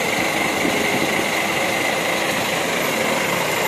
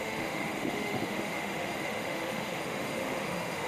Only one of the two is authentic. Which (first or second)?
first